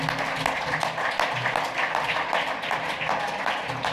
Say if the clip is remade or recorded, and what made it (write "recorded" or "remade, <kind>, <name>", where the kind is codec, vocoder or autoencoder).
recorded